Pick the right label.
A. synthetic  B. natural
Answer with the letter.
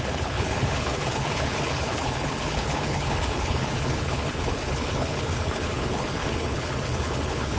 A